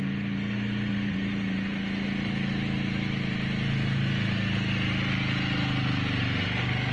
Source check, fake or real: real